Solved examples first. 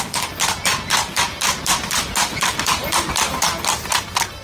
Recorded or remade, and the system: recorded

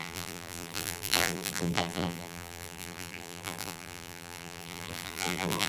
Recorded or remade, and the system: remade, vocoder, BigVGAN v2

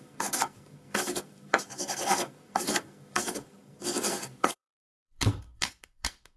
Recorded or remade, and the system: remade, codec, SNAC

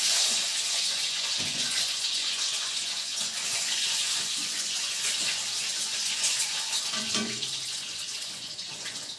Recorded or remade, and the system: remade, vocoder, Vocos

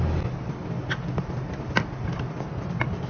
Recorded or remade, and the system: recorded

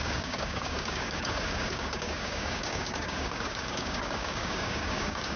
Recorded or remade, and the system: remade, codec, DAC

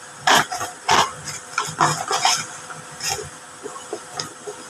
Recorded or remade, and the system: recorded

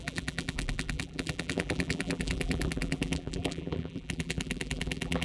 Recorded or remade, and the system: remade, vocoder, BigVGAN v2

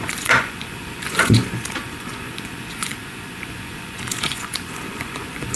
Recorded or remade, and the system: remade, vocoder, Vocos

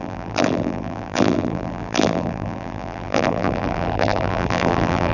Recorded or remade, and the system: remade, vocoder, BigVGAN v2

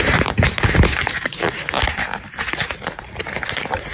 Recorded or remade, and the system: remade, vocoder, BigVGAN v2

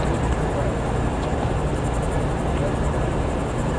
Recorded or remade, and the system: recorded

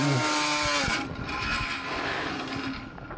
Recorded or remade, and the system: recorded